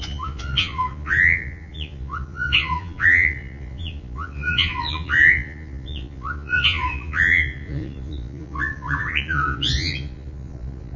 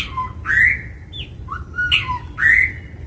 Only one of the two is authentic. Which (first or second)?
second